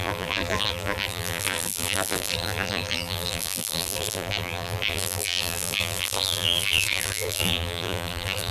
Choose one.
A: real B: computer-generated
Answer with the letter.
B